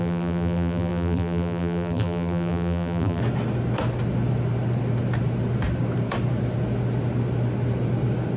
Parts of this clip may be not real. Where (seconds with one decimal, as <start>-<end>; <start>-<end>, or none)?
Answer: 0.0-3.2